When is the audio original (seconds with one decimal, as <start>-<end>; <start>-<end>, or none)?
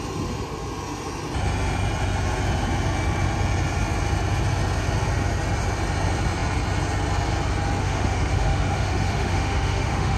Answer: 0.0-7.8